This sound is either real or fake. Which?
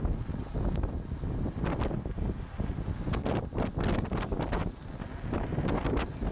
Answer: real